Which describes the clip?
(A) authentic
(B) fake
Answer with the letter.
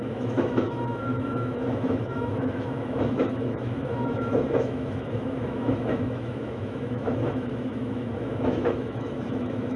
B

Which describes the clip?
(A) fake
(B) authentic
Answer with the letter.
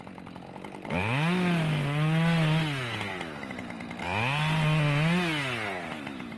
B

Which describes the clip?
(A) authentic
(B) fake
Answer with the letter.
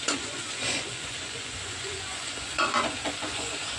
B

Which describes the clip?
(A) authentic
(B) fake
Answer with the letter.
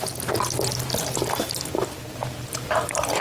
A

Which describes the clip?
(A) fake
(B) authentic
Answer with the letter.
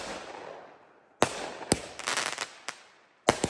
B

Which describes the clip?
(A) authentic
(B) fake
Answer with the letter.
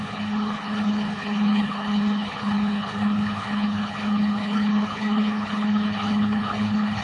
B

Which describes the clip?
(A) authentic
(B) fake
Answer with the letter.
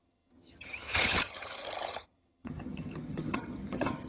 B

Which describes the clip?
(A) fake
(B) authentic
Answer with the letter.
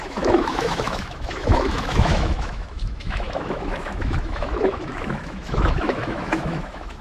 A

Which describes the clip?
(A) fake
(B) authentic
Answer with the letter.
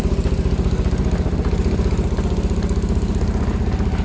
B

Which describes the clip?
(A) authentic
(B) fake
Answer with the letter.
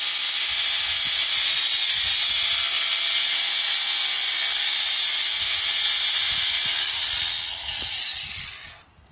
A